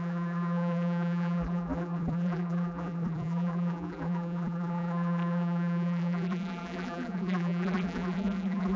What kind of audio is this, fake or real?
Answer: fake